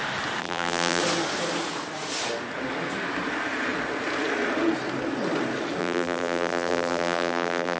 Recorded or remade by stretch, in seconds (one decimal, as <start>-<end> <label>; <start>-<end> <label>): 0.0-0.4 recorded; 0.4-1.0 remade; 1.0-5.8 recorded; 5.8-7.8 remade

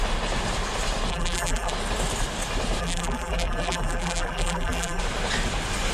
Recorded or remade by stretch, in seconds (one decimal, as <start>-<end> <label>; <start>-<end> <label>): 0.0-1.1 recorded; 1.1-1.7 remade; 1.7-2.8 recorded; 2.8-5.0 remade; 5.0-5.9 recorded

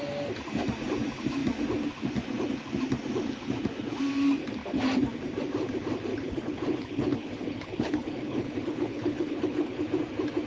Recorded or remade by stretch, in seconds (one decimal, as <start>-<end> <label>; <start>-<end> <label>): 0.0-6.1 recorded; 6.1-9.8 remade; 9.8-10.5 recorded

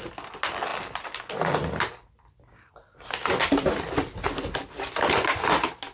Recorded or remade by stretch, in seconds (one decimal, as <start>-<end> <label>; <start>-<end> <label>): 0.0-5.9 recorded